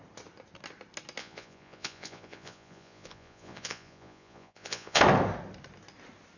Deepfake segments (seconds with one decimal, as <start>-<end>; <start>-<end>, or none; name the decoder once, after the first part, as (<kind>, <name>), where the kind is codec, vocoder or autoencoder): 1.2-5.0 (vocoder, Vocos)